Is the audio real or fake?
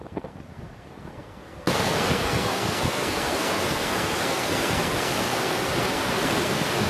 fake